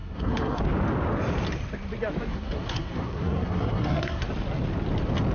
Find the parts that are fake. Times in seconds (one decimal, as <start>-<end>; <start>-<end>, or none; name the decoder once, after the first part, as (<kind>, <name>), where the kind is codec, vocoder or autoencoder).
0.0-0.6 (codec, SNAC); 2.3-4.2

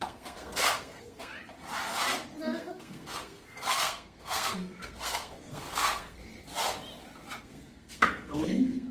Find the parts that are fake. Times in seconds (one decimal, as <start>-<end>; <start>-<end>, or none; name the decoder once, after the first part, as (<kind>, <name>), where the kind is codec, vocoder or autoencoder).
0.0-1.3 (codec, SNAC); 2.4-6.2; 7.4-8.9

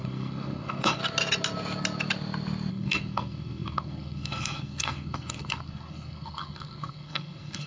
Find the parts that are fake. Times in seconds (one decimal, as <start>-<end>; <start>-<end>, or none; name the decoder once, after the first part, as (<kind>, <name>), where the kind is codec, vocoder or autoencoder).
0.0-1.0 (codec, SNAC); 2.7-7.7

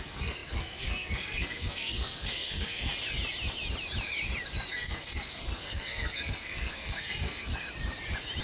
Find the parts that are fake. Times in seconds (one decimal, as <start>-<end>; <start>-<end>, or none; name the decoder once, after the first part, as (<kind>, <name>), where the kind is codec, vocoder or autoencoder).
0.0-2.9 (codec, SNAC); 4.7-7.5

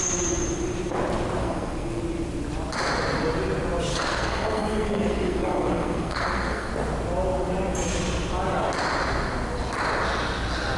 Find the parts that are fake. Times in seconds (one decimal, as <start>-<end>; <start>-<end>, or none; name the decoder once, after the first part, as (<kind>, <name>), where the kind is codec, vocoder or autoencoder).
1.4-2.0 (codec, SNAC); 3.9-6.7

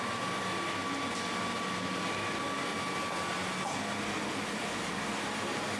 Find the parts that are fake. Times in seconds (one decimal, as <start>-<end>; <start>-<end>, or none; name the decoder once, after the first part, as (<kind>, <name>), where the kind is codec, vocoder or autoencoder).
none